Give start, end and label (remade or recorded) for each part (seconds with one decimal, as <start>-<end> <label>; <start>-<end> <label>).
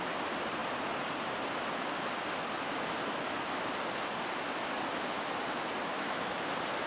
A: 0.0-5.9 recorded; 5.9-6.4 remade; 6.4-6.9 recorded